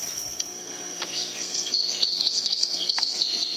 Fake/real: fake